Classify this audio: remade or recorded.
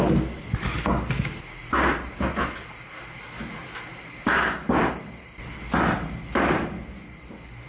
recorded